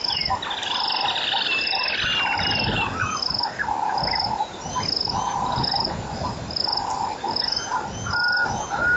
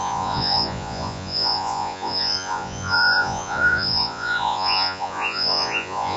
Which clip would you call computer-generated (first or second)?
second